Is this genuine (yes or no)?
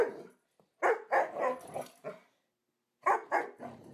yes